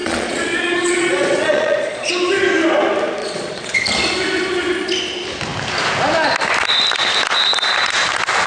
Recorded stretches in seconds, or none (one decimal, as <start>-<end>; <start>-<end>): 2.1-3.2; 3.8-8.5